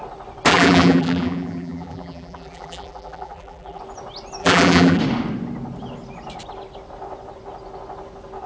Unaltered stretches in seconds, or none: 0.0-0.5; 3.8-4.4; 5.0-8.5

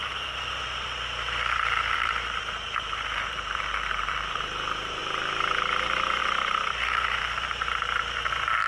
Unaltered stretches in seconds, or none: 5.0-6.2

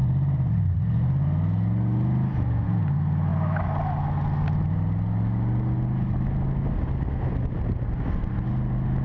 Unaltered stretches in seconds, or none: 0.8-9.0

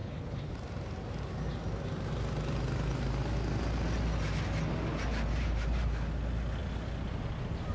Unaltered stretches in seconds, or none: 0.5-7.7

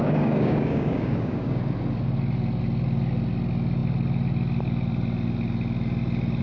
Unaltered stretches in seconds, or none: 1.6-6.4

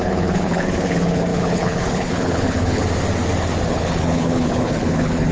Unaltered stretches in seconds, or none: 2.8-3.7

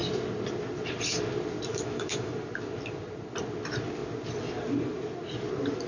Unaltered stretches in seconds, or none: 0.0-1.7; 2.3-5.9